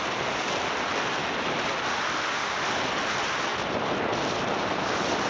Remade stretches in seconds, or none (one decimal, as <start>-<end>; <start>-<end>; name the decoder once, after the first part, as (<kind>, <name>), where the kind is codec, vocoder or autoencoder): none